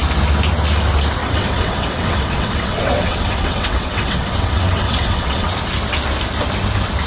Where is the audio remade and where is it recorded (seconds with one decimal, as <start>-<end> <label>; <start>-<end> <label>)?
0.0-1.2 recorded; 1.2-5.5 remade; 5.5-7.1 recorded

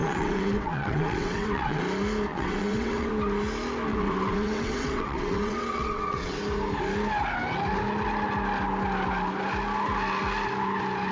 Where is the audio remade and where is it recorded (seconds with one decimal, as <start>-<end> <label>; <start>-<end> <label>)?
0.0-1.8 remade; 1.8-2.3 recorded; 2.3-3.1 remade; 3.1-3.9 recorded; 3.9-6.4 remade; 6.4-11.1 recorded

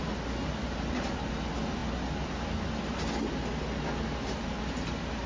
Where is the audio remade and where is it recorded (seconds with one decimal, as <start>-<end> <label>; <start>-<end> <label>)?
0.0-5.3 recorded

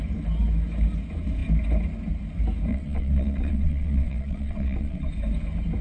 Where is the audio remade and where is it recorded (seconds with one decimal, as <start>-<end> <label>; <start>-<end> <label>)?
0.0-2.7 recorded; 2.7-5.1 remade; 5.1-5.8 recorded

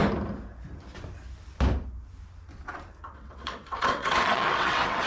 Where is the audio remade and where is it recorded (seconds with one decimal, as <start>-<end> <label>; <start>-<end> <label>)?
0.0-3.1 recorded; 3.1-5.1 remade

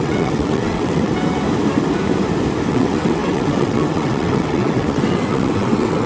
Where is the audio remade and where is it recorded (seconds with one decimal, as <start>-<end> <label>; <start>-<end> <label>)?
0.0-1.1 remade; 1.1-2.7 recorded; 2.7-6.1 remade